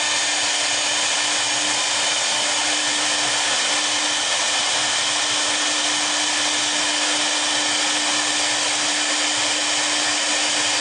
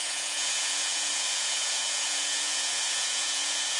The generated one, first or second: second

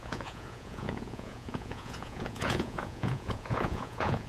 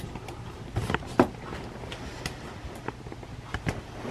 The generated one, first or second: first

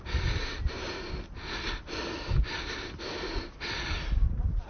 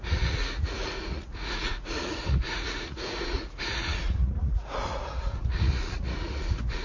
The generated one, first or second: second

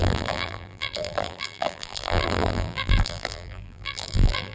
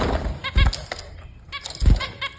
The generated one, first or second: first